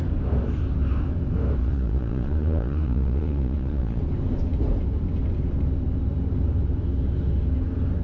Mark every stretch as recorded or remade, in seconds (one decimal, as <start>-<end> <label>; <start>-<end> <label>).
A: 0.0-1.6 recorded; 1.6-4.0 remade; 4.0-8.0 recorded